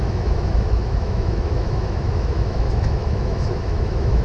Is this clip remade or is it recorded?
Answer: remade